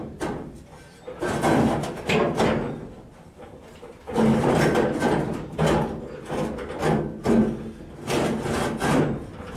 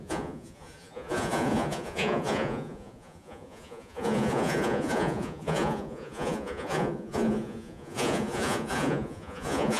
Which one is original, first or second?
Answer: first